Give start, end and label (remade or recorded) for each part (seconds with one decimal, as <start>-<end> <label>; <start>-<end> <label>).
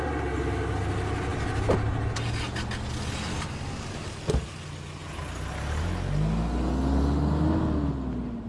0.0-8.5 recorded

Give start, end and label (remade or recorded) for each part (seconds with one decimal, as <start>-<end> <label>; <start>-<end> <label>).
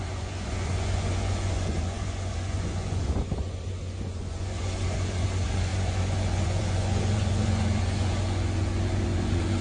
0.0-9.6 remade